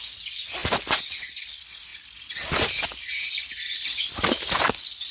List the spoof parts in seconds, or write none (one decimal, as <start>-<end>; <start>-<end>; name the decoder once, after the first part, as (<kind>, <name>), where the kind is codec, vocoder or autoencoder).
none